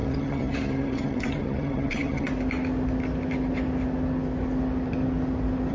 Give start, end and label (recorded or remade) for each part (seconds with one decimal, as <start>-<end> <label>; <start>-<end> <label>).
0.0-2.3 remade; 2.3-5.7 recorded